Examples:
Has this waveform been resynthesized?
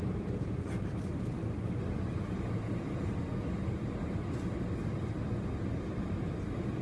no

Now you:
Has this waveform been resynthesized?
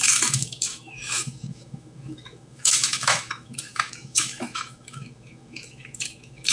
yes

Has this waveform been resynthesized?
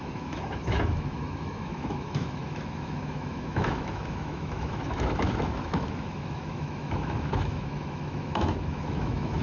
yes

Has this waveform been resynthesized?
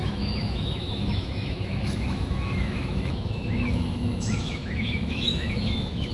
yes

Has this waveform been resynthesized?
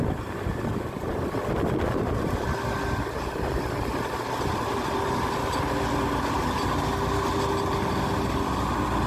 no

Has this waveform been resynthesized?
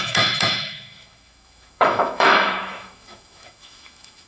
yes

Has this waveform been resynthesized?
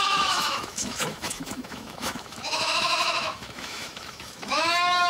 yes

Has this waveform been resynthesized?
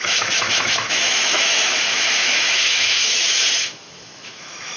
yes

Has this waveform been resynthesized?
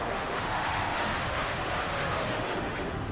yes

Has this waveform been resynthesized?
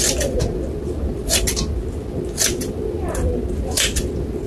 no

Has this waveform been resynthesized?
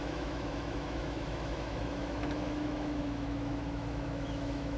yes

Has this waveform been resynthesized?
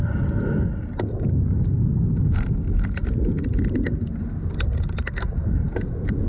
no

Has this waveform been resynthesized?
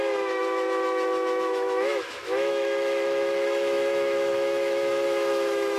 yes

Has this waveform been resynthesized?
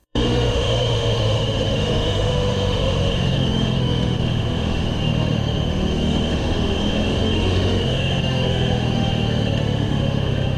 yes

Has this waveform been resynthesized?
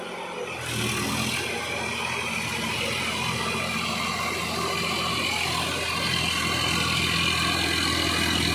no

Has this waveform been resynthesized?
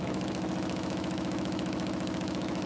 yes